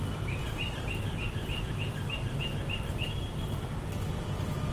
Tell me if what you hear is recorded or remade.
recorded